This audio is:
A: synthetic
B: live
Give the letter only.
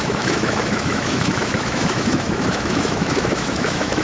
A